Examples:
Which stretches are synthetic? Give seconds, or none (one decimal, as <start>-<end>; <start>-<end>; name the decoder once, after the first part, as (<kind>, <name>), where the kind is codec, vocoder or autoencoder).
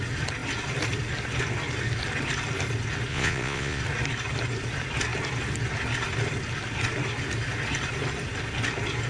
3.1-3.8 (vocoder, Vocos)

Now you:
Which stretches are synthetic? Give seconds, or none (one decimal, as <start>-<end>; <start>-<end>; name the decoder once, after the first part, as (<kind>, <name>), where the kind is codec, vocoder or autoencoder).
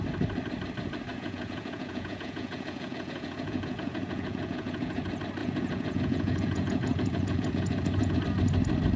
1.1-5.0 (vocoder, Vocos); 5.4-8.2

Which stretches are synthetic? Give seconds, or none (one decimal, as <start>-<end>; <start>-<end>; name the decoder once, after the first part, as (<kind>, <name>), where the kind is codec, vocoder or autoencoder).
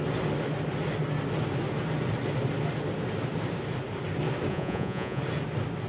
4.5-5.2 (vocoder, Vocos)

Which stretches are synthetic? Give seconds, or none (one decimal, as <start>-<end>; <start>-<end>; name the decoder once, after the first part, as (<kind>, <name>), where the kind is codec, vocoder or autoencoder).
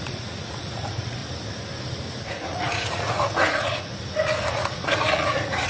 0.0-1.2 (vocoder, Vocos); 2.2-3.9; 4.5-5.7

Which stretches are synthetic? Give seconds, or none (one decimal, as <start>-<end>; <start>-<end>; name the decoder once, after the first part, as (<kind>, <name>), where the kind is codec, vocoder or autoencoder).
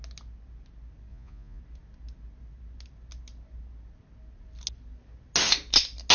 1.1-1.6 (vocoder, Vocos)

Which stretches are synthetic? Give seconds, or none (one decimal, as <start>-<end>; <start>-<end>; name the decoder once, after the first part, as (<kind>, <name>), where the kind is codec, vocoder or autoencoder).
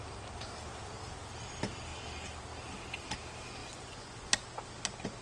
3.6-4.3 (vocoder, Vocos)